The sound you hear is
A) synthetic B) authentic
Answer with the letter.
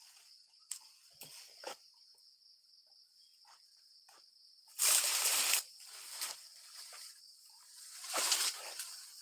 B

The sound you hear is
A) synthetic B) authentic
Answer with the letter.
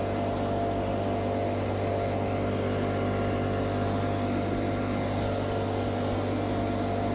B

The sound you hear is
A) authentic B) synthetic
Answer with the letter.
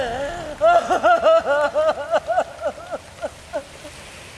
A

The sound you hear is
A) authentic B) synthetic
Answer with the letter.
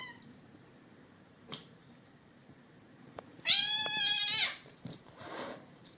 B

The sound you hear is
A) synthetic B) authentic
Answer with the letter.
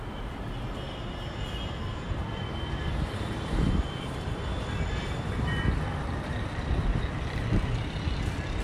A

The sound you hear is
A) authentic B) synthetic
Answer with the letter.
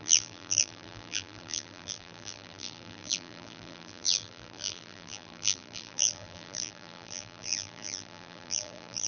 B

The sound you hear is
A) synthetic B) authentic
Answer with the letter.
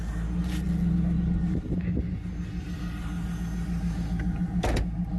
B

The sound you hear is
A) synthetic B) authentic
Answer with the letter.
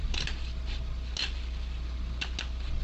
B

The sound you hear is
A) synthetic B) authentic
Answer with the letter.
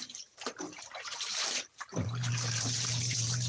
A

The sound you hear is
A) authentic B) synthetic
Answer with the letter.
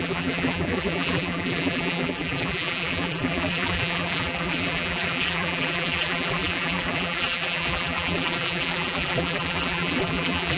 B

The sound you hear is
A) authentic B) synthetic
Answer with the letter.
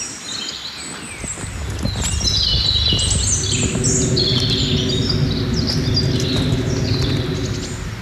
A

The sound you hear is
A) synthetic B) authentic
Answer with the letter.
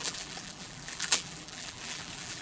A